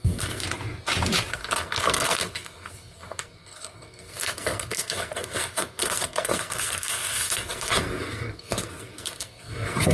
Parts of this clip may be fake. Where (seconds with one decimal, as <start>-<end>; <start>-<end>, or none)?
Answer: 0.0-0.4; 1.3-9.9